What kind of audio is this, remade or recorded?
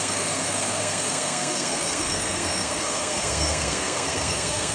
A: remade